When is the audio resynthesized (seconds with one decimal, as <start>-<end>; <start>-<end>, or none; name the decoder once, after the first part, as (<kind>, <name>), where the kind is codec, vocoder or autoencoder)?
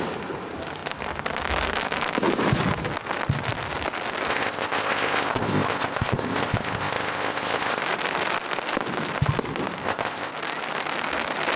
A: 4.3-7.8 (codec, ZipCodec); 9.8-10.3